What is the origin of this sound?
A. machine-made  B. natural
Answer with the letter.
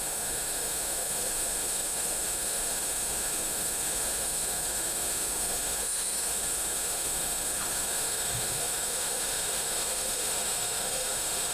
A